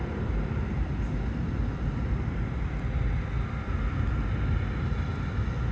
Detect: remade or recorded recorded